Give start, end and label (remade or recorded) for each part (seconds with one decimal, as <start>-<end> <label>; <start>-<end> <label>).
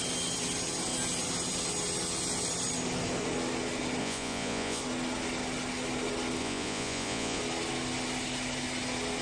0.0-4.0 recorded; 4.0-4.8 remade; 4.8-6.4 recorded; 6.4-7.4 remade; 7.4-9.2 recorded